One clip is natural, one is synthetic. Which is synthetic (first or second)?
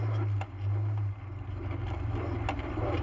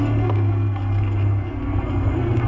second